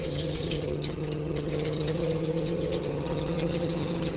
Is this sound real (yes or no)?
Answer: no